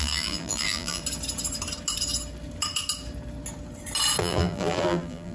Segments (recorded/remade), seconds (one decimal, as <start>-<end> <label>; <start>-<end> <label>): 0.0-1.0 remade; 1.0-4.2 recorded; 4.2-5.3 remade